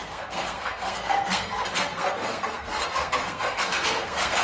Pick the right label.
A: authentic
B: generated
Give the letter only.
B